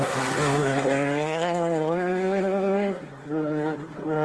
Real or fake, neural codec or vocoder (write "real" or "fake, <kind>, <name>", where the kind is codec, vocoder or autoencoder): fake, codec, SNAC